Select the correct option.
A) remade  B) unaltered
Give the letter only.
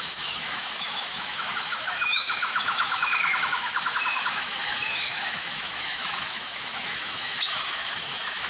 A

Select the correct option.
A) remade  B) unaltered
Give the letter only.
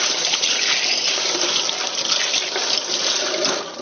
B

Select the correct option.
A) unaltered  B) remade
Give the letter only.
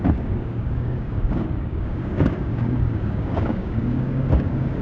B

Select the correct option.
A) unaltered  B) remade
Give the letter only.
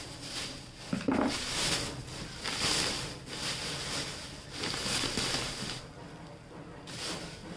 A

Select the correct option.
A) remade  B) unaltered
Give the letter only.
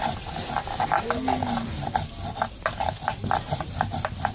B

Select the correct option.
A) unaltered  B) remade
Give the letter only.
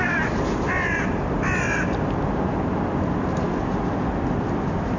A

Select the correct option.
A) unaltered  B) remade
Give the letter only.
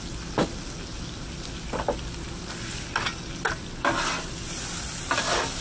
A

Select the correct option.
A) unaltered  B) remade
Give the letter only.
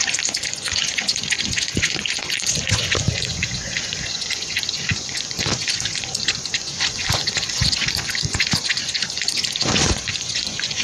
B